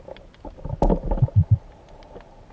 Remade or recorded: recorded